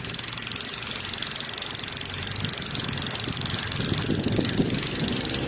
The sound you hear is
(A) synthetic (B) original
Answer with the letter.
B